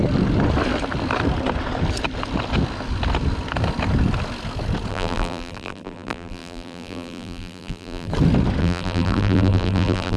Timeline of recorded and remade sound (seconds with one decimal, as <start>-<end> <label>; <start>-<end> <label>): 0.0-4.9 recorded; 4.9-8.1 remade; 8.1-8.6 recorded; 8.6-10.2 remade